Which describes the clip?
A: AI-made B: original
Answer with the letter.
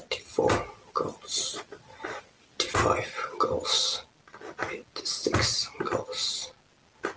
B